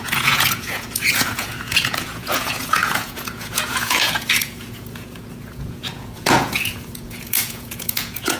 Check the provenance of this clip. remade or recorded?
remade